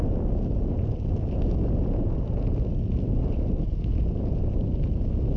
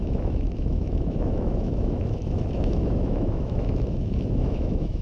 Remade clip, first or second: second